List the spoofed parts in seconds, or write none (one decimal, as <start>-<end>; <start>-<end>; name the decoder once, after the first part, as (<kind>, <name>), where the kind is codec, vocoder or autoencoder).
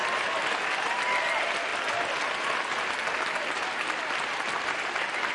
none